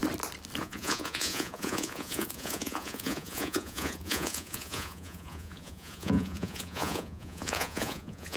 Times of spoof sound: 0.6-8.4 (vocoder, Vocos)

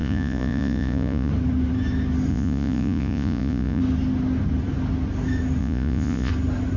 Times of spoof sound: 0.0-1.3 (vocoder, Vocos); 2.3-3.8; 5.6-6.3

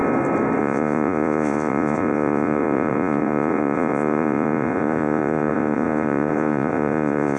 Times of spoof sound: 0.6-7.4 (vocoder, Vocos)

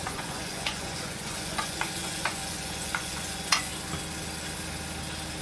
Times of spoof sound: 0.0-3.7 (vocoder, Vocos)

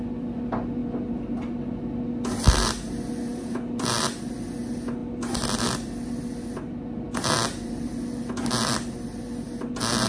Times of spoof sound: none